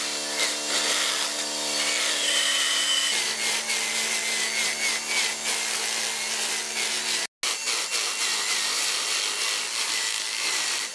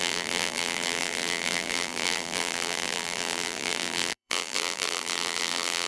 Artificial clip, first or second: second